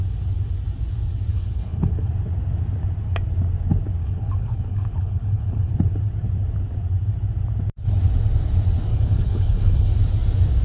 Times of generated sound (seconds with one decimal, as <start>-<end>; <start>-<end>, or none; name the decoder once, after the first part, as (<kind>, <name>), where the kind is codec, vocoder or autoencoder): 1.3-2.1 (codec, HILCodec); 4.0-5.7; 8.9-9.9